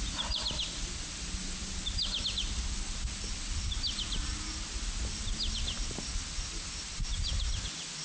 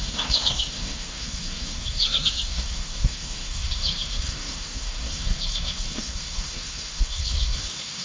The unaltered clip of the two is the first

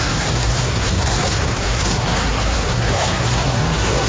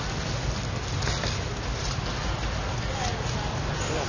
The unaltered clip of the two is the second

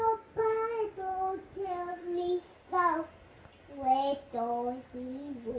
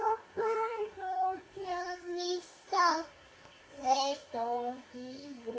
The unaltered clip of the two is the first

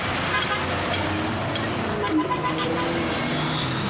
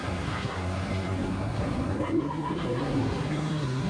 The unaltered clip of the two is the first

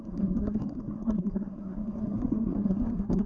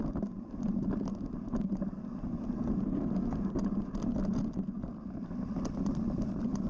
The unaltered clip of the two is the second